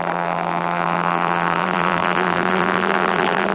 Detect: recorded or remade remade